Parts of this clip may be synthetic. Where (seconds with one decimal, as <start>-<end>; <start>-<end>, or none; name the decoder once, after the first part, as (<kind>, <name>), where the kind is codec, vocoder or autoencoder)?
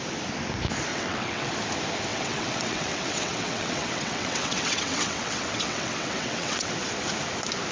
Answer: 0.9-1.5 (vocoder, WaveNeXt); 2.1-6.7